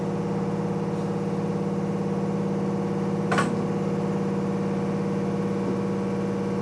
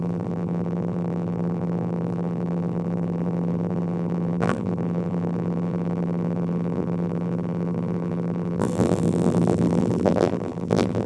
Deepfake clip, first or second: second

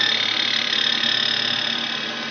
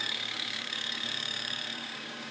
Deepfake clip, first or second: second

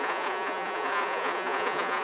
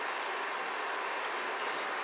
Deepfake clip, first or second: first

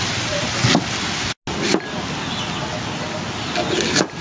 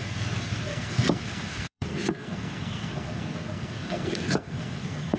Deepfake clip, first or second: second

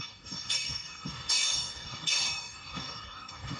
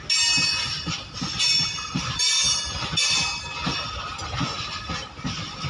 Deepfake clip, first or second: first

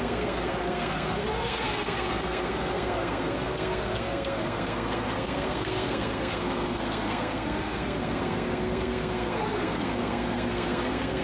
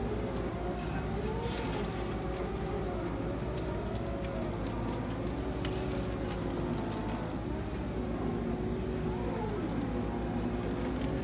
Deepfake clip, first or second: first